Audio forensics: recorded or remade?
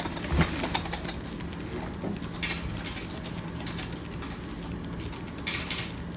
recorded